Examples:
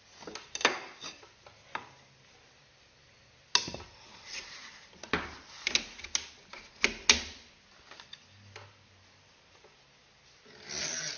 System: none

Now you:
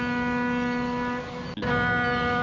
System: none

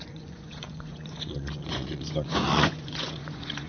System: vocoder, Vocos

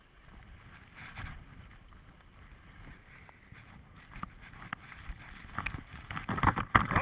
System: none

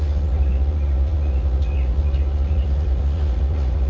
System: vocoder, Vocos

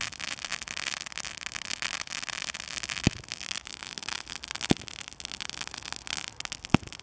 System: none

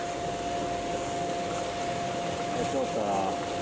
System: none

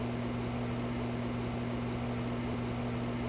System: none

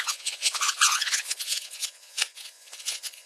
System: vocoder, Vocos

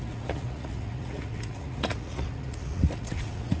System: vocoder, Vocos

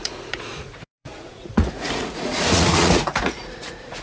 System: vocoder, Vocos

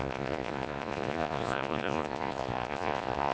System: vocoder, Vocos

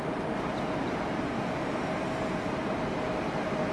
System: none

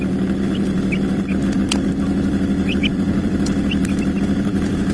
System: none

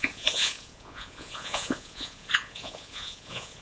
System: vocoder, Vocos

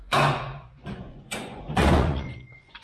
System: vocoder, Vocos